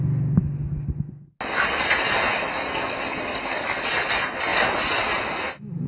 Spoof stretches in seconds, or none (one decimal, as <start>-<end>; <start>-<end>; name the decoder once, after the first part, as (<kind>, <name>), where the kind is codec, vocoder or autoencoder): none